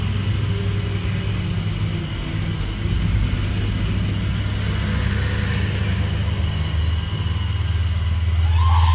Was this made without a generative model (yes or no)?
yes